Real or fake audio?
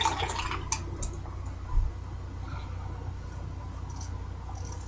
real